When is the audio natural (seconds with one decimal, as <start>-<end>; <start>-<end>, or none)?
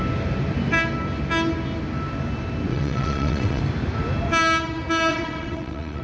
0.0-2.7; 3.6-5.1